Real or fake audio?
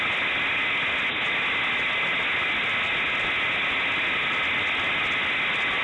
real